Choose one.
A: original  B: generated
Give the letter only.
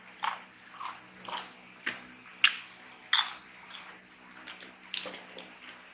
A